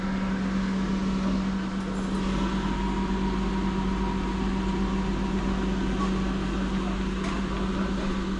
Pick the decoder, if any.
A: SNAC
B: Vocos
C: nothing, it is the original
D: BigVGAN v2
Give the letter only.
C